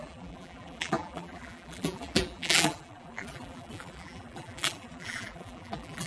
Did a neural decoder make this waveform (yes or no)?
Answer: yes